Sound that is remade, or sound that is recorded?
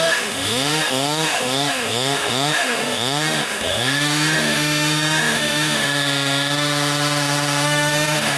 remade